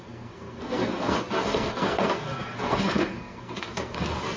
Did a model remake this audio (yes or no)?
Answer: yes